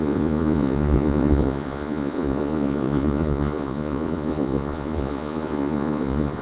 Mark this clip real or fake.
fake